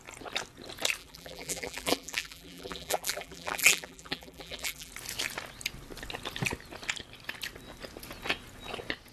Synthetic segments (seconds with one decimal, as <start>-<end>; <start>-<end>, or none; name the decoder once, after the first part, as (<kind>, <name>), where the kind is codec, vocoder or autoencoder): 1.0-4.9 (vocoder, BigVGAN v2)